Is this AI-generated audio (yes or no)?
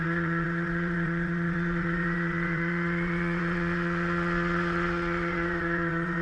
yes